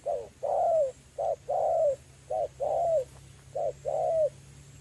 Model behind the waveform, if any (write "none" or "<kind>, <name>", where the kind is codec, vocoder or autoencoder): none